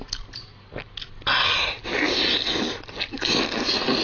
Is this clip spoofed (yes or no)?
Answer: no